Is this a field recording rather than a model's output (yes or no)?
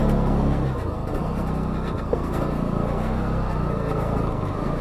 no